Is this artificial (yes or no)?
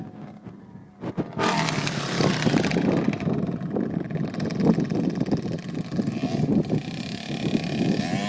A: no